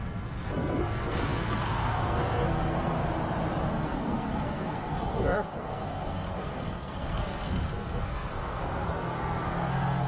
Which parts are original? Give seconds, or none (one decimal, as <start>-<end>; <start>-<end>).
3.0-3.7